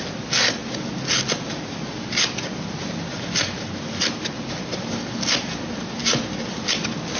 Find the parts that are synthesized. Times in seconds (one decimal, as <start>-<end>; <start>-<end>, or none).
4.7-5.6; 6.0-6.8